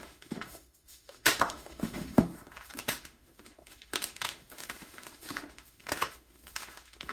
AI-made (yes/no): yes